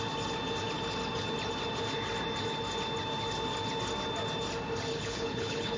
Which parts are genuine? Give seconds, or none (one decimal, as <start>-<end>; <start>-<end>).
0.0-4.9